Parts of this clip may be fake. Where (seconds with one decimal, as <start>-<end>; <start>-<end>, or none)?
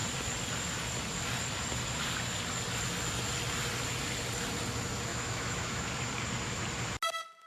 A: 5.1-5.9